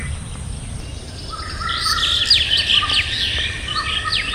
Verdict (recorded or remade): recorded